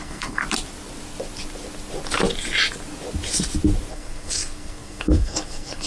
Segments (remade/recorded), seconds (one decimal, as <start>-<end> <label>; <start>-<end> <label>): 0.0-0.4 remade; 0.4-3.9 recorded; 3.9-5.9 remade